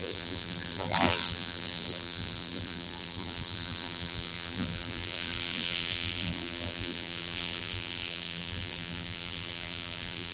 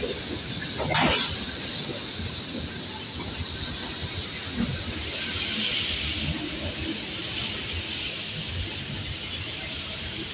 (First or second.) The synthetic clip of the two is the first